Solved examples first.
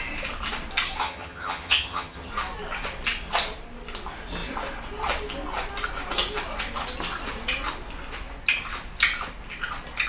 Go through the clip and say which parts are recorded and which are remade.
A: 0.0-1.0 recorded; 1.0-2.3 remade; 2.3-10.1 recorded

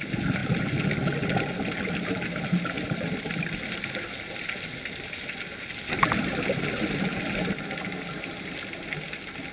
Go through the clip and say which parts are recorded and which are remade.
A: 0.0-9.5 recorded

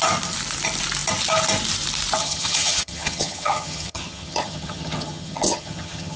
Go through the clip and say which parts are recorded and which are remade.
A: 0.0-2.2 recorded; 2.2-6.2 remade

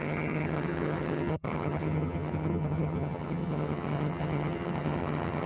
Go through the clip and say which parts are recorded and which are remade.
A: 0.0-5.5 remade

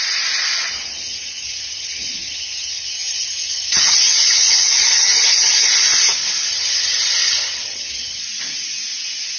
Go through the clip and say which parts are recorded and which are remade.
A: 0.0-0.7 recorded; 0.7-5.7 remade; 5.7-6.5 recorded; 6.5-8.2 remade; 8.2-9.4 recorded

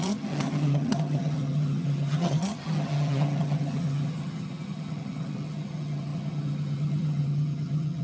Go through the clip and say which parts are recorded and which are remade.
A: 0.0-8.0 remade